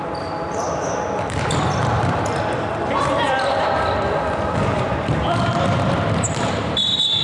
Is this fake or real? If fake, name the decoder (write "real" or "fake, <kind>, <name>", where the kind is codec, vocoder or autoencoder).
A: fake, vocoder, BigVGAN v2